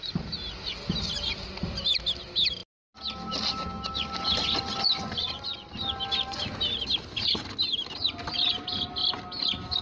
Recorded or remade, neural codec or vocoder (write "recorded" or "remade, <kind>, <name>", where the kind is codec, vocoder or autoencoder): recorded